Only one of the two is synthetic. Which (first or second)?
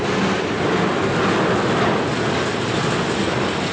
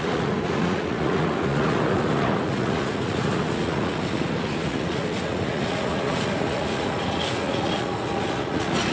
second